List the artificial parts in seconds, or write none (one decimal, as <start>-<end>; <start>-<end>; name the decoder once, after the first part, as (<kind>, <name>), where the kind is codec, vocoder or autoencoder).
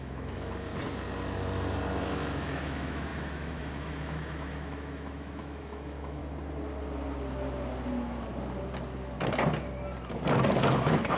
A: 0.0-0.7 (autoencoder, DAC-VAE); 2.0-6.2; 10.7-11.2